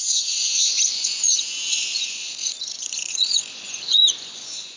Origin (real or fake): fake